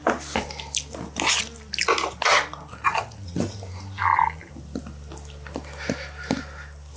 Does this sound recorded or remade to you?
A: recorded